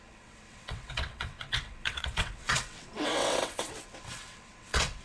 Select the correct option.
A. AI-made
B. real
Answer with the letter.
A